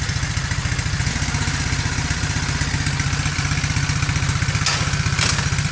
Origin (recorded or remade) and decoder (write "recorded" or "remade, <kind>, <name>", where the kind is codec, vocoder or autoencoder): recorded